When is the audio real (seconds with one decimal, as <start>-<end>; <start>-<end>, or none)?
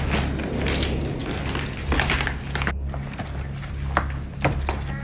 0.0-5.0